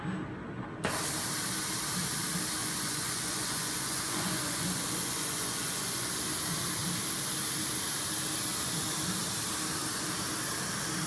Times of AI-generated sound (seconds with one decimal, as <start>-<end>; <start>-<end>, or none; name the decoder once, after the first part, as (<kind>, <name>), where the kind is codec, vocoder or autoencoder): 2.6-6.1 (vocoder, Vocos)